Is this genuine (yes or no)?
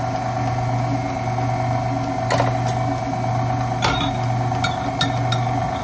yes